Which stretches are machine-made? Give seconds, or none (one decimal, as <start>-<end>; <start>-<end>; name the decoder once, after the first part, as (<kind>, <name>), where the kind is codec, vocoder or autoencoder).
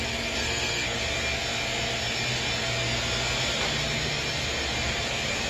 0.4-1.0 (codec, SNAC)